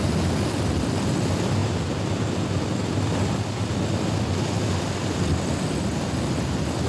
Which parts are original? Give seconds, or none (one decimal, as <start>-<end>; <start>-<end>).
0.0-6.9